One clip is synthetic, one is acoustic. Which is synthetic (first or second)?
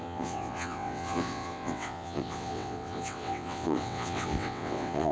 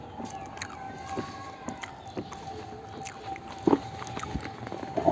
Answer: first